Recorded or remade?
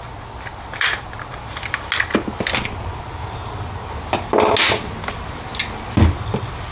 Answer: recorded